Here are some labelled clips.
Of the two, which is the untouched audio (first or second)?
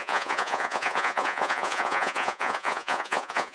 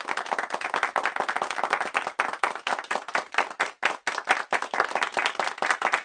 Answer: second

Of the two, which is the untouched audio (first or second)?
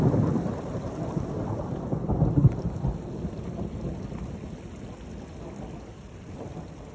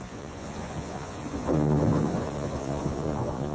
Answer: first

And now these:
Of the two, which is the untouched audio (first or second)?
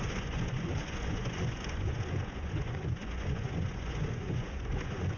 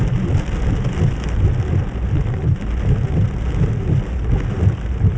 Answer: second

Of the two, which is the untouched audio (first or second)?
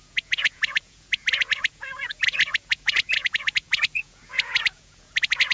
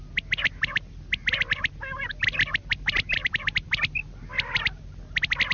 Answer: second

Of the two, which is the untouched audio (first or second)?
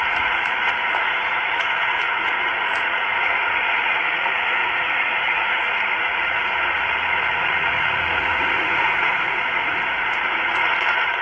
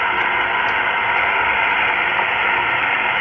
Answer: second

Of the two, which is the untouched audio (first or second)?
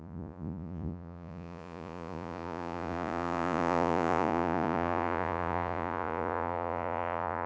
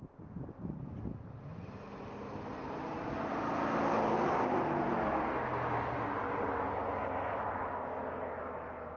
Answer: second